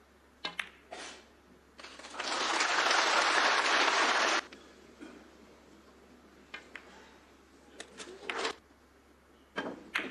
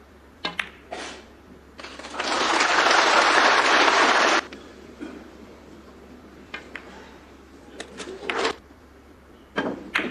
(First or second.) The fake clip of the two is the second